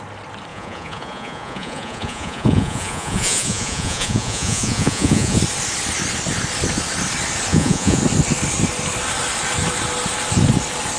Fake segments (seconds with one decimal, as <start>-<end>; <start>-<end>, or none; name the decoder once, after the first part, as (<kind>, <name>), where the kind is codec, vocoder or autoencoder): 0.5-5.4 (vocoder, Vocos); 7.5-8.0